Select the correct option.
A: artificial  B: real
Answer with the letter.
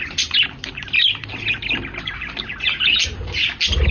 B